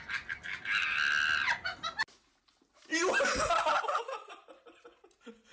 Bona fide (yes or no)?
yes